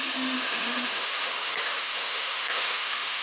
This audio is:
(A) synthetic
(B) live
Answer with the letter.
A